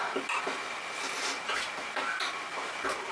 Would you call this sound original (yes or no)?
yes